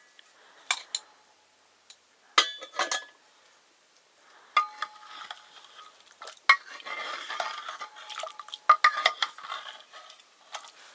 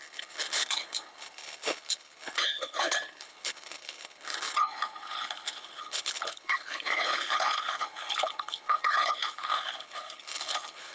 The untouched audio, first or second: first